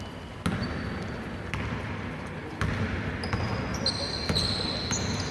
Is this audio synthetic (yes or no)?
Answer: no